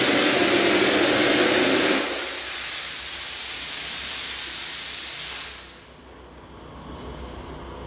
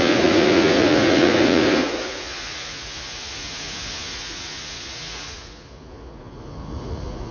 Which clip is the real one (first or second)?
first